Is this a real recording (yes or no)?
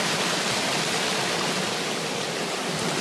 yes